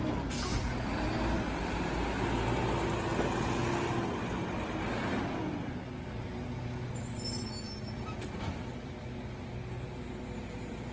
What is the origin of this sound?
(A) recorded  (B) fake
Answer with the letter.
A